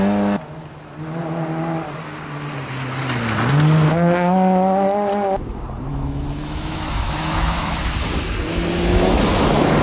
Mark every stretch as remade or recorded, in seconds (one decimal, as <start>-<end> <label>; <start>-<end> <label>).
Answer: 0.0-5.9 recorded; 5.9-7.8 remade; 7.8-9.8 recorded